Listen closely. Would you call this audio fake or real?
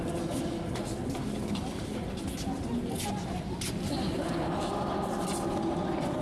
real